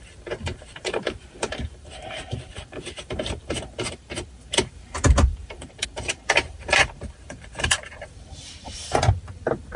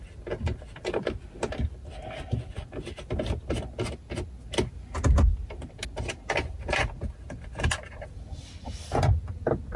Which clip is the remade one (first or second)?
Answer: first